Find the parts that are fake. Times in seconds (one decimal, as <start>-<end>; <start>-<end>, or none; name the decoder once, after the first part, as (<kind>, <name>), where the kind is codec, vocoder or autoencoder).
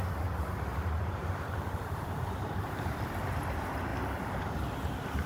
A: 0.7-3.0 (vocoder, BigVGAN v2); 3.9-4.5